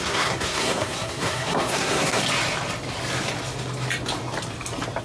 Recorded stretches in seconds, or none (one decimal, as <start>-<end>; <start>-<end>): 2.2-5.0